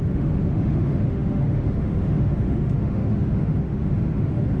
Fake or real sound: fake